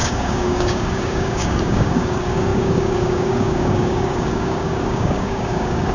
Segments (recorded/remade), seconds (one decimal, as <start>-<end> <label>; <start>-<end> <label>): 0.0-5.9 remade